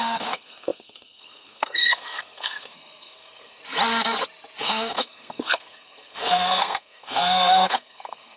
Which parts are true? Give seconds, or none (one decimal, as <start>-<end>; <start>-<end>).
3.6-4.6

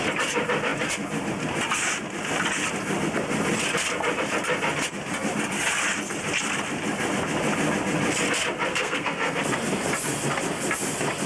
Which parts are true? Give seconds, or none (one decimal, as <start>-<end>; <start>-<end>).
0.0-8.7; 9.4-11.3